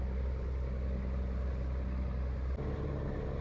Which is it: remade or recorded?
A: recorded